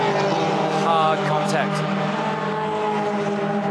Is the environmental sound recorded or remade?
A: recorded